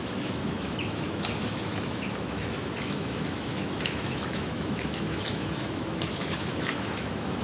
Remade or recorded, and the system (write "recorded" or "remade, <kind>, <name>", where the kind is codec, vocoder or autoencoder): remade, autoencoder, DAC-VAE